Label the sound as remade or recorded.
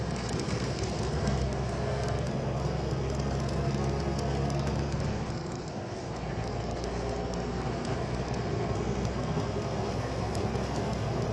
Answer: remade